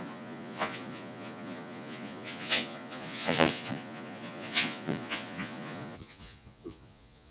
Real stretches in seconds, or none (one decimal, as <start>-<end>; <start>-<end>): none